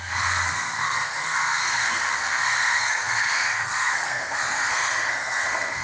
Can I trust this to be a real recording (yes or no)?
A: no